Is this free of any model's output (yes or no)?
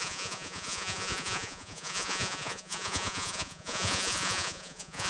no